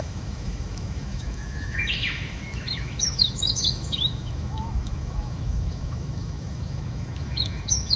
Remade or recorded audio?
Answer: remade